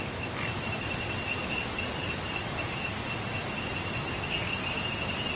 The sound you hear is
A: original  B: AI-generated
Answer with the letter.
A